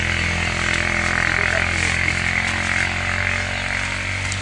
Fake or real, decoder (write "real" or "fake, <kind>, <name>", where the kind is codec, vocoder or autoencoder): real